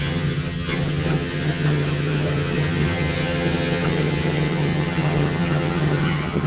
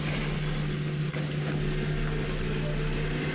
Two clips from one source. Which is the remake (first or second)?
first